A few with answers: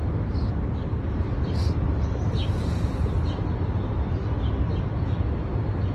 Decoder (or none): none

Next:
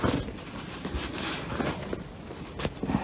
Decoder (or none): none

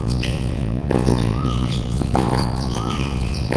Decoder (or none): vocoder, Vocos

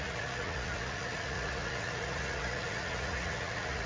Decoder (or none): vocoder, Vocos